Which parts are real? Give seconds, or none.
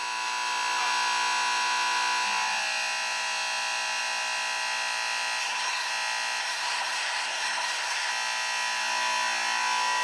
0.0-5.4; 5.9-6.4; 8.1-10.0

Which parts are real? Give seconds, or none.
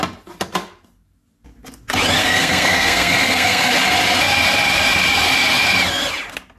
0.0-2.2; 3.7-6.6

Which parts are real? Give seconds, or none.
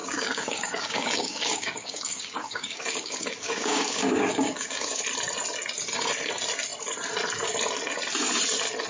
5.0-8.9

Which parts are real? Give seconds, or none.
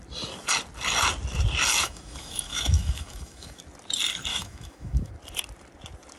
0.0-1.8; 3.6-4.3; 5.1-6.2